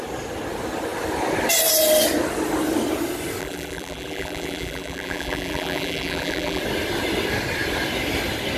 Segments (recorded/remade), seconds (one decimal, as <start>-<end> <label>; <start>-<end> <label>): 0.0-3.4 recorded; 3.4-6.6 remade; 6.6-8.6 recorded